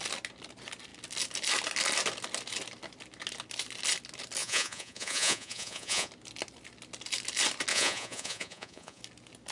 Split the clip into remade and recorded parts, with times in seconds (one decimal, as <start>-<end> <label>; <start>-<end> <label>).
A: 0.0-4.4 recorded; 4.4-6.1 remade; 6.1-7.7 recorded; 7.7-9.0 remade; 9.0-9.5 recorded